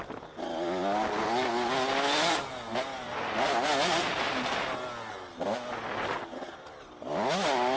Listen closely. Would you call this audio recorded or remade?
recorded